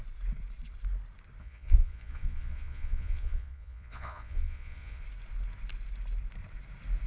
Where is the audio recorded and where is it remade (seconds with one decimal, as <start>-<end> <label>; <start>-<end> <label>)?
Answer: 0.0-1.4 recorded; 1.4-5.0 remade; 5.0-7.1 recorded